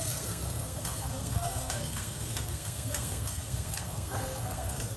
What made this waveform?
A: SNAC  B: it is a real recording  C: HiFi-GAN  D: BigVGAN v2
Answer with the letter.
A